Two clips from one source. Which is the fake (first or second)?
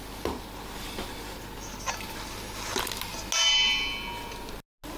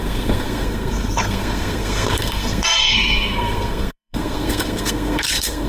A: second